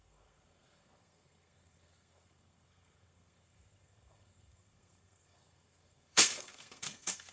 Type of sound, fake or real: fake